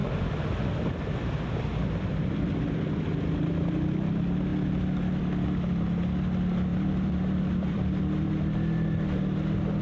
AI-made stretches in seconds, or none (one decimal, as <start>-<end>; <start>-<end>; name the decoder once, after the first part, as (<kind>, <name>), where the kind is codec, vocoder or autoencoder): 0.0-2.3 (vocoder, BigVGAN v2); 6.7-8.0